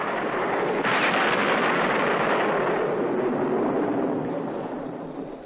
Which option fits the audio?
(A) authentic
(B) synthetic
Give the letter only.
A